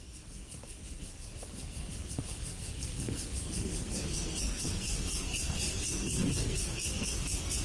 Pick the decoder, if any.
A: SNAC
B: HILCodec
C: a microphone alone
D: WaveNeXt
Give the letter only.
A